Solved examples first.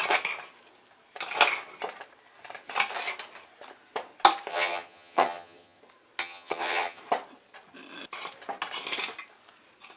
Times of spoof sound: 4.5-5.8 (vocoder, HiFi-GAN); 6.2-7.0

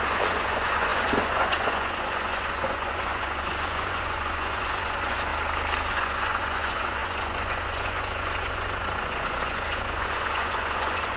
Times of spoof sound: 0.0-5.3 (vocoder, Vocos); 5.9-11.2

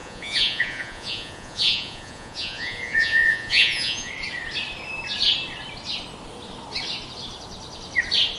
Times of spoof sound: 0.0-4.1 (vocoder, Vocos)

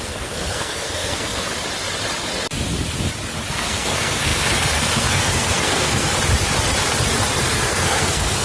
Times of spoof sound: 0.0-1.5 (codec, SNAC); 3.5-6.1; 7.5-8.4